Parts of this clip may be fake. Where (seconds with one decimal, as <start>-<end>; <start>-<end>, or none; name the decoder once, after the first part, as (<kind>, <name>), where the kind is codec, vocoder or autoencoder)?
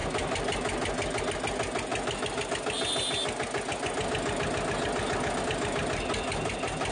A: none